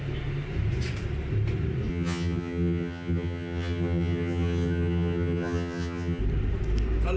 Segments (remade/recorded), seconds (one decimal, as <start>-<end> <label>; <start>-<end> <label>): 0.0-1.9 recorded; 1.9-6.2 remade; 6.2-7.2 recorded